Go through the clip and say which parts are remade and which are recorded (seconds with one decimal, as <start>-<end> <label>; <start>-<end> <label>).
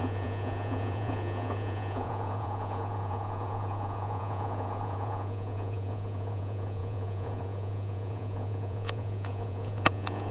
0.0-10.3 remade